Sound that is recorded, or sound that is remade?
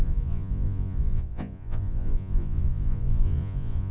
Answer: remade